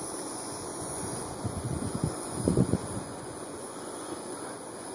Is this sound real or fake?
fake